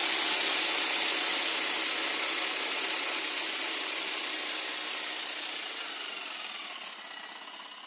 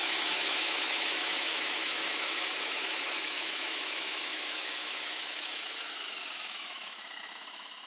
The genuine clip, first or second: first